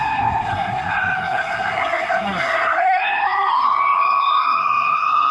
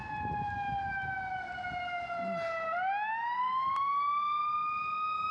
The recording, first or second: second